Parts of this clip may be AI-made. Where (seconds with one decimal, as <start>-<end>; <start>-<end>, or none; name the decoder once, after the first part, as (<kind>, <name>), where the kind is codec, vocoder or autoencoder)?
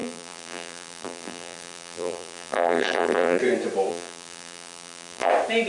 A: 0.0-3.4 (vocoder, BigVGAN v2); 3.9-5.3